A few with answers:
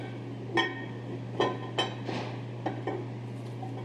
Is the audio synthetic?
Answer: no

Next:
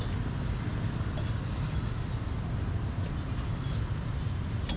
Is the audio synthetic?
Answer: no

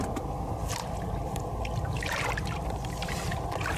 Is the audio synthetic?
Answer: no